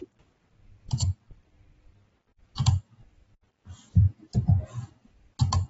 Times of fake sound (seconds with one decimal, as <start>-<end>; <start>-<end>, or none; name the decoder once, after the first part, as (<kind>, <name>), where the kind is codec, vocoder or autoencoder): 2.3-5.3 (vocoder, BigVGAN v2)